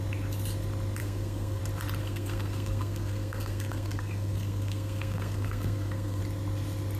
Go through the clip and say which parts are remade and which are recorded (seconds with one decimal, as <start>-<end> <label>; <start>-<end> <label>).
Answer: 0.0-1.0 recorded; 1.0-1.6 remade; 1.6-2.0 recorded; 2.0-6.2 remade; 6.2-7.0 recorded